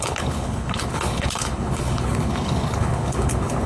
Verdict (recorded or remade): remade